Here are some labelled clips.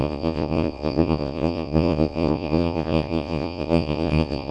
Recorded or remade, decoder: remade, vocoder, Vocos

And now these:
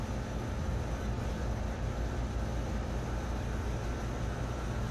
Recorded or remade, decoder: recorded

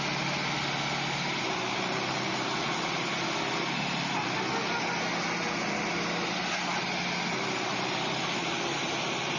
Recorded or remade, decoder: recorded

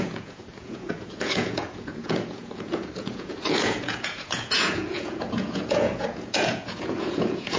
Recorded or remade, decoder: remade, vocoder, Vocos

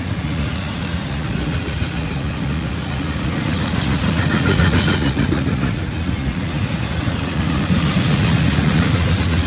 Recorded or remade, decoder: remade, vocoder, Vocos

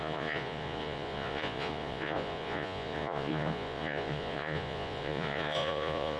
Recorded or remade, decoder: remade, vocoder, Vocos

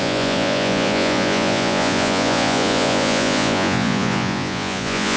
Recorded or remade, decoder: remade, vocoder, Vocos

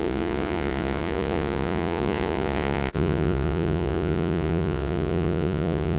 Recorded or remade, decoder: remade, vocoder, Vocos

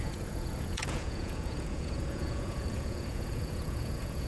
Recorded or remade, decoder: remade, vocoder, Vocos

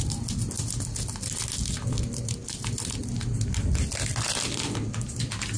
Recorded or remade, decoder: recorded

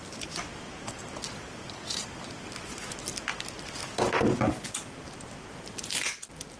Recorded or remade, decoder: recorded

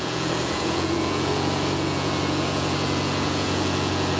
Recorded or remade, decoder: remade, vocoder, Vocos